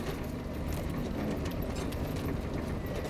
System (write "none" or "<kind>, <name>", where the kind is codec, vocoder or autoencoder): none